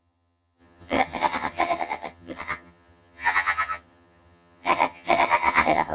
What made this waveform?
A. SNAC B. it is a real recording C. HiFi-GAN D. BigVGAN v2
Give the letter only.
C